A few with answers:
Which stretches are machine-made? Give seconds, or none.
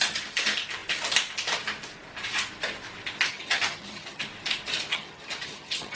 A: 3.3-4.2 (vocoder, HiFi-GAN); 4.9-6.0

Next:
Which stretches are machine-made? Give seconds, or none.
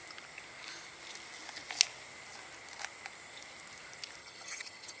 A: 4.2-5.0 (vocoder, HiFi-GAN)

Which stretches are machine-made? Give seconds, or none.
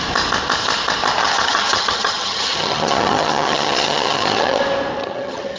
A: 1.2-4.6 (vocoder, HiFi-GAN); 5.0-5.6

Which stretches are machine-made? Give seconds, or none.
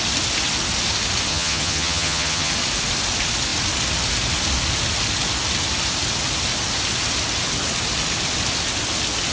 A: 1.3-2.5 (vocoder, HiFi-GAN)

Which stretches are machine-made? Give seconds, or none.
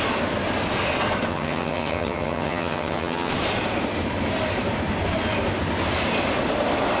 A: 1.3-3.3 (vocoder, HiFi-GAN)